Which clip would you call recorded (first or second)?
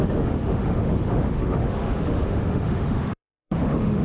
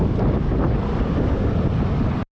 second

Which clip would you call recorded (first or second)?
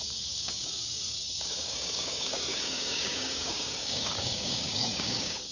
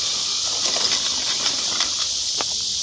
second